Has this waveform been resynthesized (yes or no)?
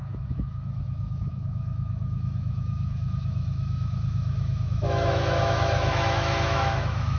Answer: yes